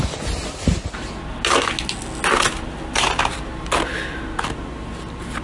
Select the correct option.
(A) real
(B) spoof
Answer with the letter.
A